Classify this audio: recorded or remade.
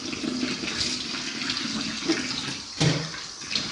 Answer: recorded